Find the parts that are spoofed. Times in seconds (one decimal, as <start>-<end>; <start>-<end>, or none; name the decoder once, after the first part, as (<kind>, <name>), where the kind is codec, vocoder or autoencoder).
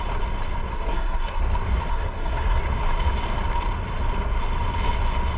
0.7-1.4 (codec, SNAC); 1.9-2.6